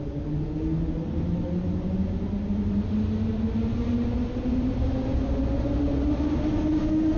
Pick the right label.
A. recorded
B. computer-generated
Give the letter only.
A